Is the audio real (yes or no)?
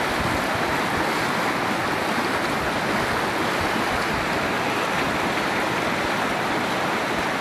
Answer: yes